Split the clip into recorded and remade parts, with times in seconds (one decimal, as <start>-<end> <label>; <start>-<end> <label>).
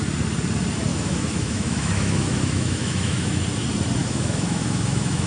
0.0-0.9 recorded; 0.9-3.4 remade; 3.4-4.0 recorded; 4.0-5.3 remade